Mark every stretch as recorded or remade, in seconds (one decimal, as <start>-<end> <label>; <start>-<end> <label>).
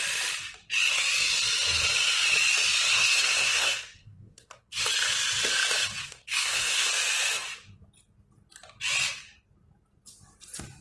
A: 0.0-2.9 recorded; 2.9-4.8 remade; 4.8-6.0 recorded; 6.0-6.9 remade; 6.9-10.8 recorded